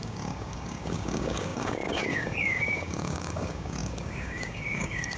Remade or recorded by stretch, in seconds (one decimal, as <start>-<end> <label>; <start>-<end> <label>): 0.0-5.2 remade